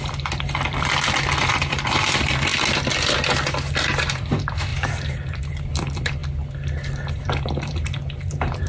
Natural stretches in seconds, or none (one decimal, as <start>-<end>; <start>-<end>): 2.5-4.1; 6.2-7.2